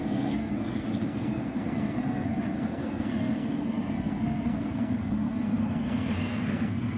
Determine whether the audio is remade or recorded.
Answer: remade